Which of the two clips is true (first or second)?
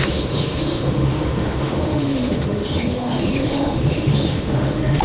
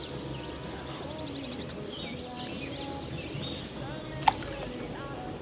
second